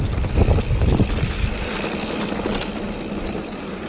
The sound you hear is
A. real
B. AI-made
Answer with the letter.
A